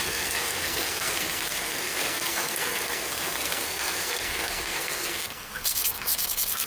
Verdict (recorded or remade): remade